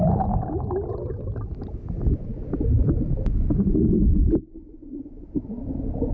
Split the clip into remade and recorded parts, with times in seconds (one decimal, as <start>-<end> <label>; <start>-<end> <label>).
0.0-6.1 recorded